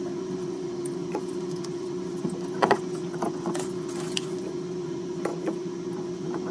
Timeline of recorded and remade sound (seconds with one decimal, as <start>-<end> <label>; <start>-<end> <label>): 0.0-6.5 remade